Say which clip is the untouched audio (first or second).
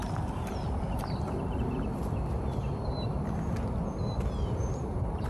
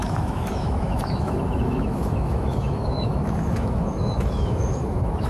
first